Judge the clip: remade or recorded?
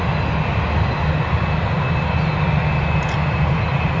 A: recorded